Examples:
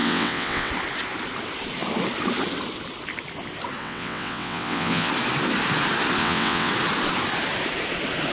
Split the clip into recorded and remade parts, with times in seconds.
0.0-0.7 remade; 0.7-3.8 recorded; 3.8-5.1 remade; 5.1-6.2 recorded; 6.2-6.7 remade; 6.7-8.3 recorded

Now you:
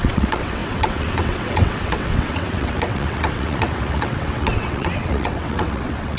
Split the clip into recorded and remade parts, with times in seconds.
0.0-6.2 remade

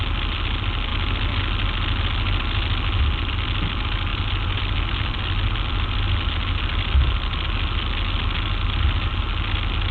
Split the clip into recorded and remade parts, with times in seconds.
0.0-9.9 recorded

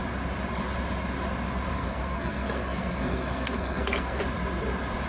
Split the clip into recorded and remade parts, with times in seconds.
0.0-1.7 recorded; 1.7-4.2 remade; 4.2-5.1 recorded

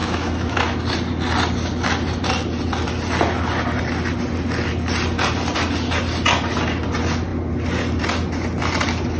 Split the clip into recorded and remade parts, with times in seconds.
0.0-0.8 remade; 0.8-9.2 recorded

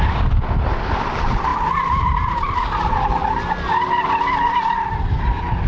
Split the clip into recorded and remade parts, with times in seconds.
0.0-5.7 recorded

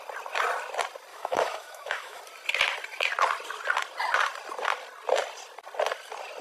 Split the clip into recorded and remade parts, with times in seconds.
0.0-1.1 recorded; 1.1-2.2 remade; 2.2-6.4 recorded

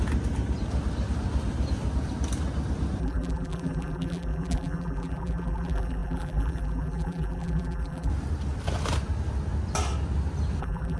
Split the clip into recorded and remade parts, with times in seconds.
0.0-3.0 recorded; 3.0-8.1 remade; 8.1-10.6 recorded; 10.6-11.0 remade